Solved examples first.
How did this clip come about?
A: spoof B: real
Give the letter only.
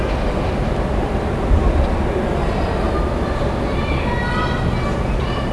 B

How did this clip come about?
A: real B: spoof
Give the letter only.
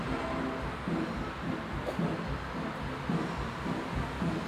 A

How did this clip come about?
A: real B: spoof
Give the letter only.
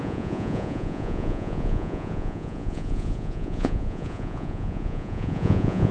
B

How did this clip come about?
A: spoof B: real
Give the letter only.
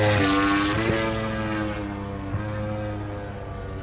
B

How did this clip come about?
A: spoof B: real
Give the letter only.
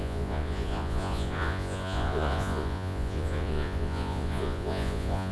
A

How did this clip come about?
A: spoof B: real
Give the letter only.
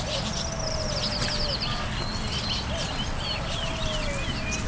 B